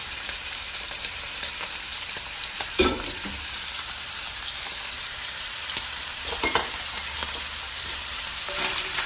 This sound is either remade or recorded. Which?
remade